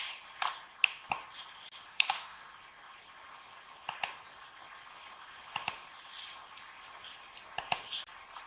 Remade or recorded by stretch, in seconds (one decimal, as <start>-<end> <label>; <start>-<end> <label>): 0.0-1.9 recorded; 1.9-2.4 remade; 2.4-8.5 recorded